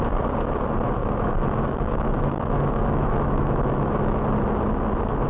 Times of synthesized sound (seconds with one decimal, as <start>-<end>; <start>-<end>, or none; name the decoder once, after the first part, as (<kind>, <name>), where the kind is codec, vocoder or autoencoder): 1.0-4.2 (autoencoder, DAC-VAE)